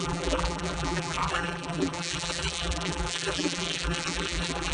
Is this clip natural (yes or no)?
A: no